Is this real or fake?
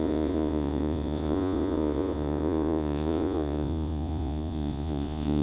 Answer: fake